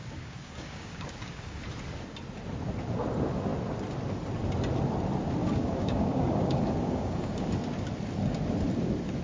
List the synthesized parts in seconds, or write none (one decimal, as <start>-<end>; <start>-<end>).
0.0-1.6; 5.4-7.5